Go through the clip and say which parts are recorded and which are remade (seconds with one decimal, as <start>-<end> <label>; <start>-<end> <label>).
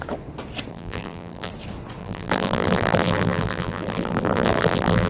0.0-0.7 recorded; 0.7-1.5 remade; 1.5-2.0 recorded; 2.0-5.1 remade